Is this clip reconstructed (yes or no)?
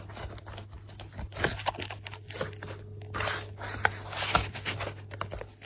no